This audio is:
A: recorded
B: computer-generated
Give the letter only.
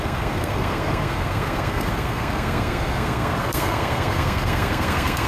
B